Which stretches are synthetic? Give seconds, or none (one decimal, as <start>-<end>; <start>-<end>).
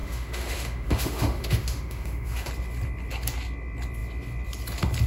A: 0.0-2.5